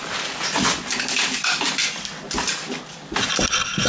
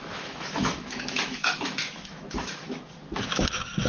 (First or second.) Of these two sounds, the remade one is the second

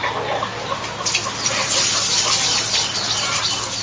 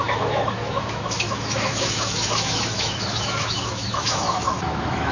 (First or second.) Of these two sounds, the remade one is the second